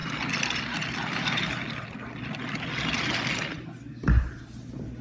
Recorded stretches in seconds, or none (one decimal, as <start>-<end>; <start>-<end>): 0.0-5.0